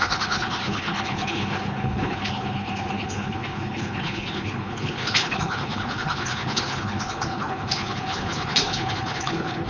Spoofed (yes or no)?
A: yes